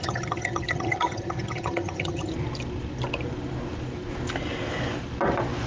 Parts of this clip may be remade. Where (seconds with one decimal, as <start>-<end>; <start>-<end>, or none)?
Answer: 0.0-2.3